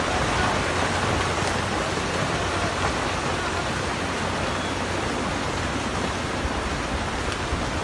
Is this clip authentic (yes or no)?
yes